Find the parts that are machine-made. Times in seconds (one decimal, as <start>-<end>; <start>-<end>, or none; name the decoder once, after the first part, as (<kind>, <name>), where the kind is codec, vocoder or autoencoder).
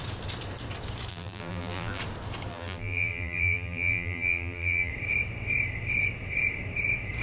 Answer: 1.1-2.0 (vocoder, BigVGAN v2); 2.5-4.9